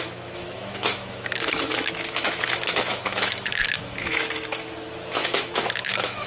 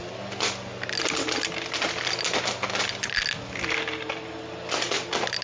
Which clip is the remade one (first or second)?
first